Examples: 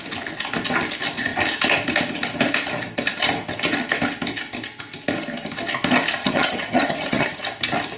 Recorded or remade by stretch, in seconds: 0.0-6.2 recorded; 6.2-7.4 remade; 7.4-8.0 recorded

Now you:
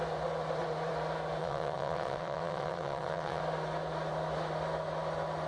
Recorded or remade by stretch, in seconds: 0.0-1.4 recorded; 1.4-3.4 remade; 3.4-5.5 recorded